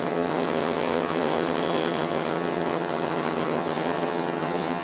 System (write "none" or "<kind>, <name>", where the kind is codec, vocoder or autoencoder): vocoder, HiFi-GAN